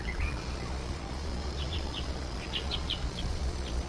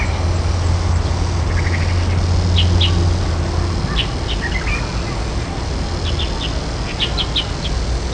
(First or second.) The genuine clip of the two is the second